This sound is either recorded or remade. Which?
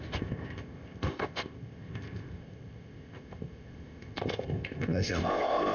remade